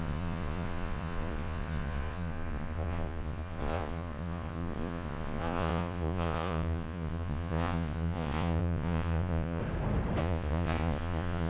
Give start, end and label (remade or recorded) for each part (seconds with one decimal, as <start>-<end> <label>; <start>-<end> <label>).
0.0-9.6 remade; 9.6-10.2 recorded; 10.2-11.5 remade